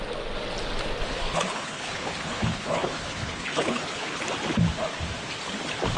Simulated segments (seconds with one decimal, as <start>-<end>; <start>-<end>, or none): 1.0-4.2